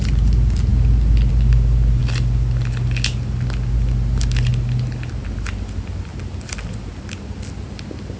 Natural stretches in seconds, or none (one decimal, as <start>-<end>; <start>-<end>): 0.0-8.2